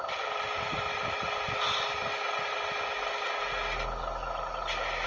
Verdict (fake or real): real